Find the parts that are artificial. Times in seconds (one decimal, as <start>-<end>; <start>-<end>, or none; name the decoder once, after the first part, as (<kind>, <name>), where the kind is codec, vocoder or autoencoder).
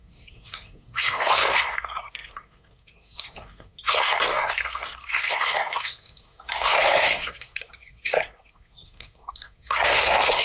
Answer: 0.0-10.4 (codec, SNAC)